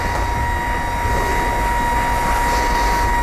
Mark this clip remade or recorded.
recorded